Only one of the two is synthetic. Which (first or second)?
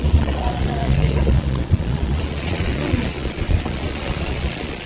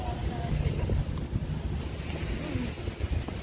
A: first